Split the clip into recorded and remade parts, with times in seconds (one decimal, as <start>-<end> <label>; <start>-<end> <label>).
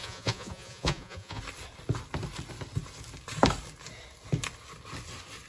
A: 0.0-1.4 remade; 1.4-5.5 recorded